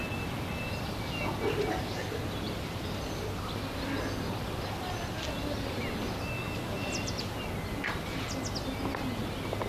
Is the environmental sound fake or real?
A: real